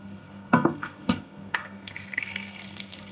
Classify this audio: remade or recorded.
remade